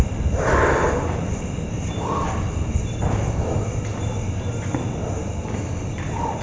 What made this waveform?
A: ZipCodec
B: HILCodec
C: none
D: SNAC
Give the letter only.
C